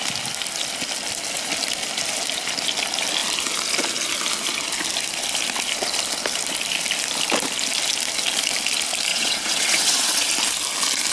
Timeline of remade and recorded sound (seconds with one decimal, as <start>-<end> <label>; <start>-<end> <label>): 0.0-9.1 recorded; 9.1-10.3 remade; 10.3-11.1 recorded

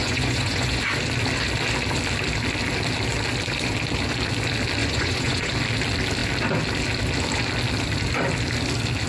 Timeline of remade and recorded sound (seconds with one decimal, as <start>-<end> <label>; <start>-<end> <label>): 0.0-0.8 remade; 0.8-4.8 recorded; 4.8-5.5 remade; 5.5-9.1 recorded